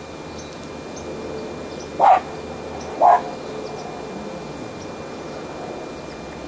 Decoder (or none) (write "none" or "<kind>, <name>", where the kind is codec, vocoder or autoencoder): none